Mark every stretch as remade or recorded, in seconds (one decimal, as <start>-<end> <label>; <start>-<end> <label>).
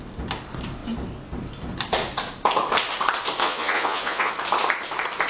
0.0-3.4 recorded; 3.4-4.3 remade; 4.3-5.3 recorded